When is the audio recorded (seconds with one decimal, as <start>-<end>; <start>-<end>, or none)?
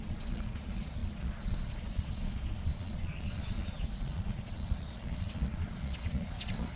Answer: none